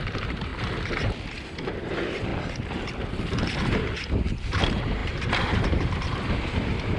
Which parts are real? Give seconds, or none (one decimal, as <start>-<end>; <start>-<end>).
0.5-1.5; 2.3-4.6